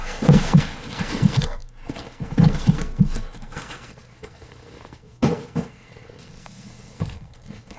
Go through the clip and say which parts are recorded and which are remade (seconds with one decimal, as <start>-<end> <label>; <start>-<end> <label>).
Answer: 0.0-7.8 remade

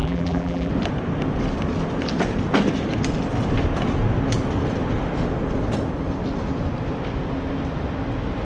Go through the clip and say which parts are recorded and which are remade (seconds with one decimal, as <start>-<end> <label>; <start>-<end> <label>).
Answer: 0.0-0.7 remade; 0.7-8.4 recorded

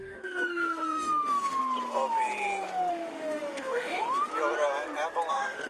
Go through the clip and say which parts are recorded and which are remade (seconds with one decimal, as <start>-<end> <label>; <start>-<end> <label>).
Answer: 0.0-1.6 remade; 1.6-2.9 recorded; 2.9-4.3 remade; 4.3-5.3 recorded; 5.3-5.7 remade